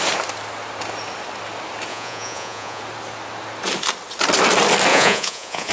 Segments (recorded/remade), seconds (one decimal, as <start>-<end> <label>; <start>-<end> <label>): 0.0-1.9 recorded; 1.9-2.8 remade; 2.8-4.9 recorded; 4.9-5.7 remade